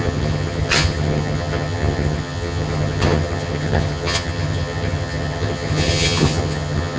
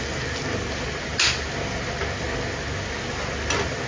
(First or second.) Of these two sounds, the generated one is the first